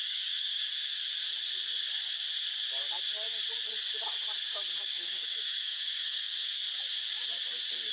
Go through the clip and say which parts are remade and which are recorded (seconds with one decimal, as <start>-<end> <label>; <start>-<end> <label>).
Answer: 0.0-0.6 remade; 0.6-4.8 recorded; 4.8-6.6 remade; 6.6-7.9 recorded